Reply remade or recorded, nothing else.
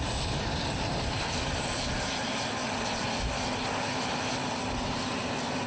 recorded